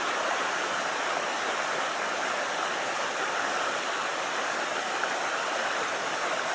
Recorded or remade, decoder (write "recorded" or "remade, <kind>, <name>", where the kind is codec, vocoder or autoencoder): recorded